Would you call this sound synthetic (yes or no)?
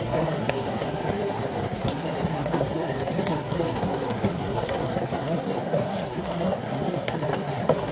yes